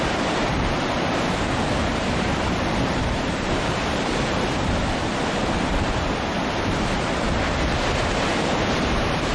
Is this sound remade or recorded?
remade